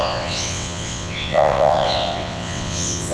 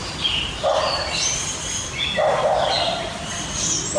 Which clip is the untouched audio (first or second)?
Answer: second